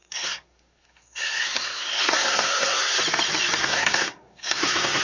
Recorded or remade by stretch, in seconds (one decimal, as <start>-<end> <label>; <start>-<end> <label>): 0.0-3.0 remade; 3.0-3.6 recorded; 3.6-5.0 remade